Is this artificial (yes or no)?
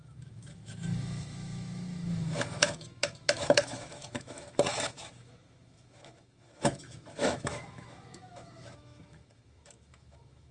yes